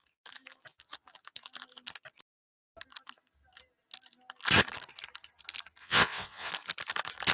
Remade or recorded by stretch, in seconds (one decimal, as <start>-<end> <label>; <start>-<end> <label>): 0.0-5.8 recorded; 5.8-6.5 remade; 6.5-7.3 recorded